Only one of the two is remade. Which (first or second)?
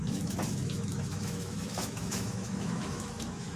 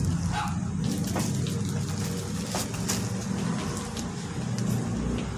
first